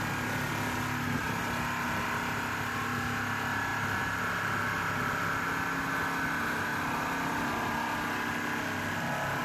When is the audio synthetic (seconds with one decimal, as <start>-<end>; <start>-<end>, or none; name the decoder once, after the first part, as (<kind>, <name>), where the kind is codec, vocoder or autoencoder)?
3.7-4.2 (vocoder, BigVGAN v2)